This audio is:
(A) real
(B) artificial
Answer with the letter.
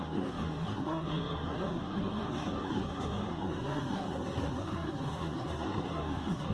B